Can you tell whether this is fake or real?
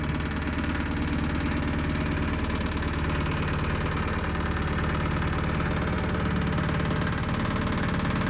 real